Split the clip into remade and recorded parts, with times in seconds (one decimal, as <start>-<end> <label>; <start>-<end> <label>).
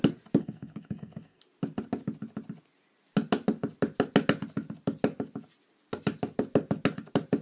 0.0-0.4 recorded; 0.4-1.4 remade; 1.4-7.4 recorded